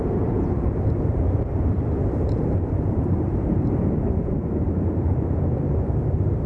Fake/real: fake